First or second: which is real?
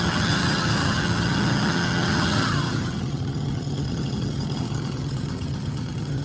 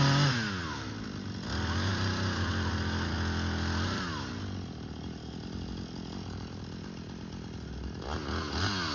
second